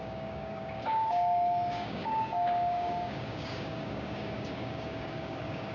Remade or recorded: remade